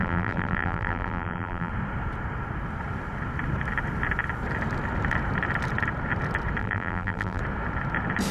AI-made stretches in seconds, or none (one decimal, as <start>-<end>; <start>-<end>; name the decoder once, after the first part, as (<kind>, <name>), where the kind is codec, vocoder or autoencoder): 0.0-1.7 (vocoder, BigVGAN v2); 6.6-7.4